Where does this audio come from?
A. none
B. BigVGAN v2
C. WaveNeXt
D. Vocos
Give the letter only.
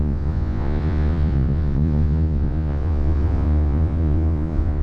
D